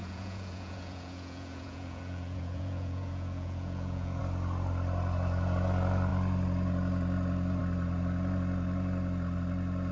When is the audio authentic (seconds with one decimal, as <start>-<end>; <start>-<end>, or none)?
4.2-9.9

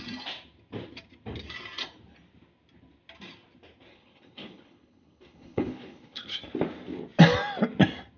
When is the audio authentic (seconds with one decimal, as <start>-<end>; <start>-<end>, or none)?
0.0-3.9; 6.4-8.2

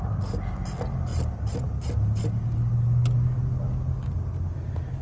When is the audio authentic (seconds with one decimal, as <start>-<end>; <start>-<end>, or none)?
0.0-5.0

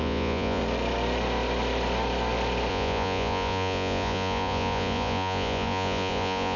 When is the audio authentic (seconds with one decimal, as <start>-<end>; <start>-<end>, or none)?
0.6-2.7

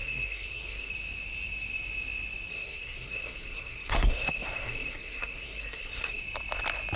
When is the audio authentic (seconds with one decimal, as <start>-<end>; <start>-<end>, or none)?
0.9-2.5; 6.2-7.0